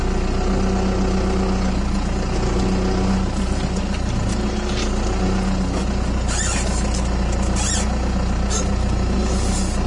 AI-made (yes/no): no